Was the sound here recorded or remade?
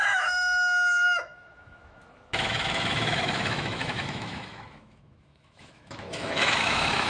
remade